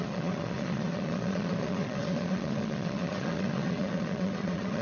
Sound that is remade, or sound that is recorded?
remade